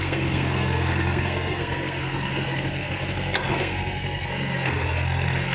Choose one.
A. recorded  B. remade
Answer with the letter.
B